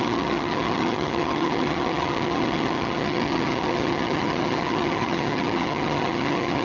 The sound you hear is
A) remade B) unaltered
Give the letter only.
A